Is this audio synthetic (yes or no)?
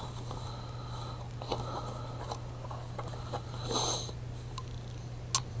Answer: no